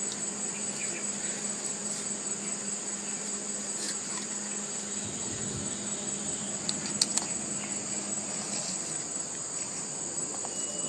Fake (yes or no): no